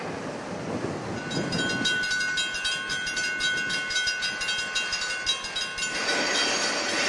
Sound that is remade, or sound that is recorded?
recorded